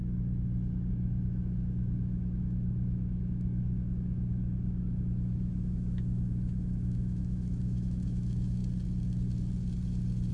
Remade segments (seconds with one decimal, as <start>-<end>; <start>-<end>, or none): 0.9-8.6